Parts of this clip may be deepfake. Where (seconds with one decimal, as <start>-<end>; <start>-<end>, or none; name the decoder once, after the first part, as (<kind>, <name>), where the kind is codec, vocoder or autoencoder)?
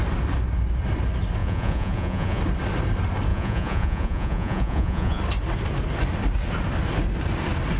1.4-2.4 (vocoder, Vocos); 3.3-5.2